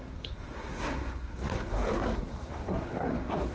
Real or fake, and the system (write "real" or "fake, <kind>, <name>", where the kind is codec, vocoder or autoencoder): fake, codec, SNAC